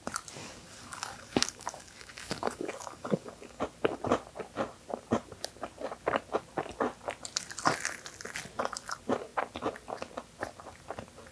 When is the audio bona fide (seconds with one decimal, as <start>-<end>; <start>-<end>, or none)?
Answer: 0.0-0.4; 3.6-11.3